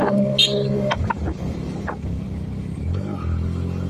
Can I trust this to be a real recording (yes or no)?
no